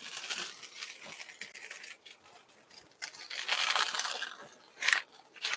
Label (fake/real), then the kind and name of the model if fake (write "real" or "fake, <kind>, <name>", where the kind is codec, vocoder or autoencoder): fake, vocoder, BigVGAN v2